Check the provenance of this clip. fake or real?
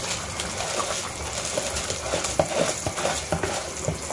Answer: real